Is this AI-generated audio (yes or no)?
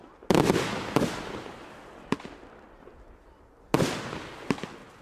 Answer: no